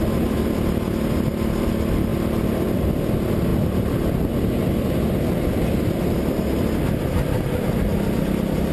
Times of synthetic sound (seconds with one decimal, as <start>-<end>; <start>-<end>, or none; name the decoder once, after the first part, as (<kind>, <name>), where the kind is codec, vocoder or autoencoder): none